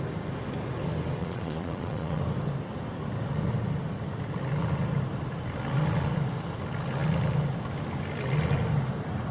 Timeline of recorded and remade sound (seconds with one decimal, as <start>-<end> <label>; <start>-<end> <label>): 0.0-1.2 recorded; 1.2-2.2 remade; 2.2-9.3 recorded